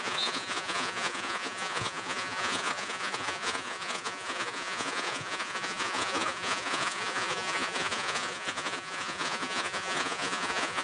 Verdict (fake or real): fake